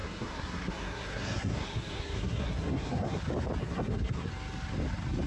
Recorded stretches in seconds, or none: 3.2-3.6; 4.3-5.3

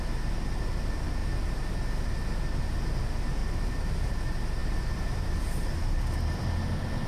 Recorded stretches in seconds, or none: 0.0-3.4; 4.1-4.6; 5.5-7.1

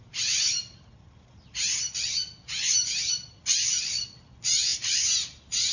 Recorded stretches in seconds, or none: 0.0-5.7

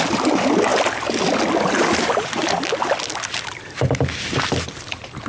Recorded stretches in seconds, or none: 0.0-5.3

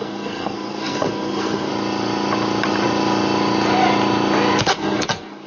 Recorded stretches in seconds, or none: 1.7-4.7